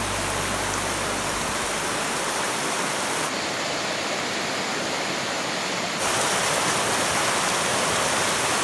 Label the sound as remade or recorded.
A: recorded